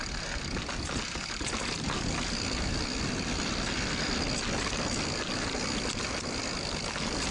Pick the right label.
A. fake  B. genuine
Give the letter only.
B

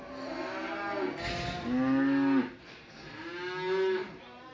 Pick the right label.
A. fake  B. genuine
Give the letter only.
B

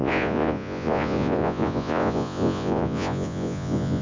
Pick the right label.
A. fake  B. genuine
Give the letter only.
A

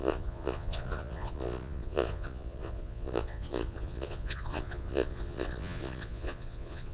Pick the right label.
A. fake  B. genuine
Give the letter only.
A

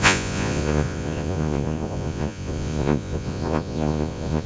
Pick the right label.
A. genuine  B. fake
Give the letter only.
B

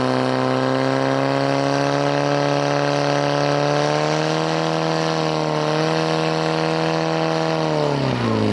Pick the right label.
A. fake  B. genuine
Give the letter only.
B